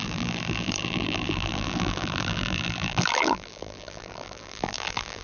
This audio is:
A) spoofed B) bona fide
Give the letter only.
A